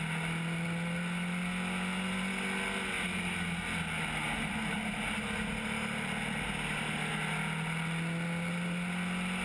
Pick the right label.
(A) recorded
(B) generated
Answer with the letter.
A